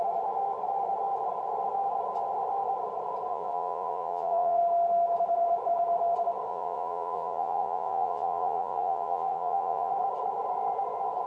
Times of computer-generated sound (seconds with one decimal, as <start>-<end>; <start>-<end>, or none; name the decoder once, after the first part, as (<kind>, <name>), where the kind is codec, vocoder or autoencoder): 3.3-4.6 (vocoder, Vocos); 6.5-9.9